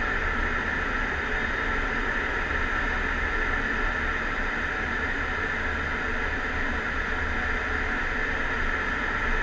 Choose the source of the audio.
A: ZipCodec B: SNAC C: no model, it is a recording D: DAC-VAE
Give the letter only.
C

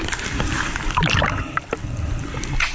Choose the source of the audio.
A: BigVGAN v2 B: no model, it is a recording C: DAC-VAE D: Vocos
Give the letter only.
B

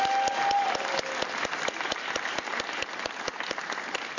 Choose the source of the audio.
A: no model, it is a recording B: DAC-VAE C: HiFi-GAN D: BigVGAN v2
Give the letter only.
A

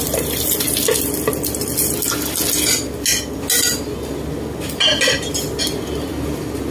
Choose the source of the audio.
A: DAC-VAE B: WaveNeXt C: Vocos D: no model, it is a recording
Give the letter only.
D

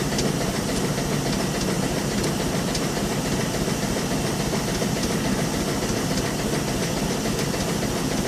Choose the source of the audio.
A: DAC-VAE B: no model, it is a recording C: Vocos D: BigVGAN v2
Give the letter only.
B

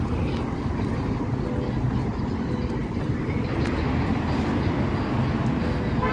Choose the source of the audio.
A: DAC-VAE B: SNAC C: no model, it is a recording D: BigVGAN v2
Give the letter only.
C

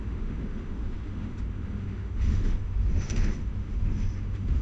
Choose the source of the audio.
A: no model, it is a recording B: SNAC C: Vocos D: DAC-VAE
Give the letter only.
D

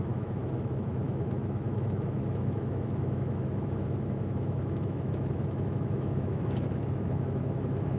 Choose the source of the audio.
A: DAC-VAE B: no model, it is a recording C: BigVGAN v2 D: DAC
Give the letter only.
A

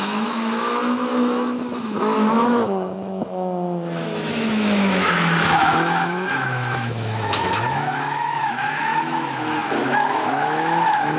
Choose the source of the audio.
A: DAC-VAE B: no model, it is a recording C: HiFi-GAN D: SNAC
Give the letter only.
A